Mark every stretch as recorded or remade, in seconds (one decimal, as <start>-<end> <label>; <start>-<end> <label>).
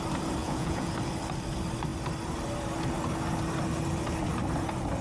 0.0-0.4 recorded; 0.4-0.9 remade; 0.9-5.0 recorded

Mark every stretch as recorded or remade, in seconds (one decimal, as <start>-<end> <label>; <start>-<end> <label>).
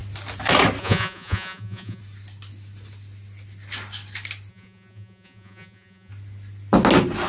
0.0-0.8 recorded; 0.8-2.0 remade; 2.0-4.5 recorded; 4.5-6.1 remade; 6.1-7.3 recorded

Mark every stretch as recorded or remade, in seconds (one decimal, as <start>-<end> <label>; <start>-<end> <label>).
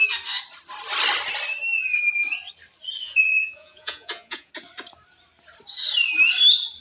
0.0-3.0 recorded; 3.0-4.5 remade; 4.5-6.8 recorded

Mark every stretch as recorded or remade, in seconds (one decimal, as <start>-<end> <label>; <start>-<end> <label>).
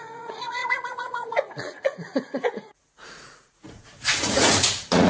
0.0-5.1 remade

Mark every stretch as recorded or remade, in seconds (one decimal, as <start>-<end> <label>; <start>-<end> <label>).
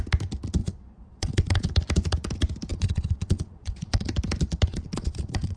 0.0-0.6 recorded; 0.6-1.7 remade; 1.7-2.7 recorded; 2.7-4.1 remade; 4.1-4.7 recorded; 4.7-5.6 remade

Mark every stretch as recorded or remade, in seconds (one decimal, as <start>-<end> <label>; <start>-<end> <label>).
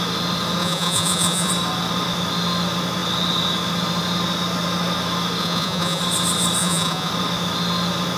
0.0-0.6 recorded; 0.6-1.5 remade; 1.5-5.4 recorded; 5.4-6.0 remade; 6.0-6.6 recorded; 6.6-7.1 remade; 7.1-8.2 recorded